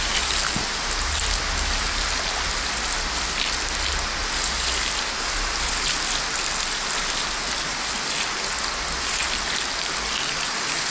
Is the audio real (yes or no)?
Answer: yes